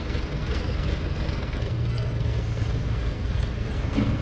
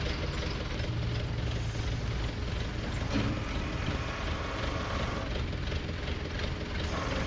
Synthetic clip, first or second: first